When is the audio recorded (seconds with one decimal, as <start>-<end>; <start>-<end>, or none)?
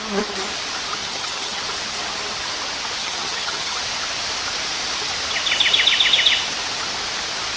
0.0-1.0; 1.6-3.0; 3.8-7.6